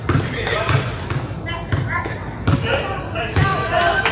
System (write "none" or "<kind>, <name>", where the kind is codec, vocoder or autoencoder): none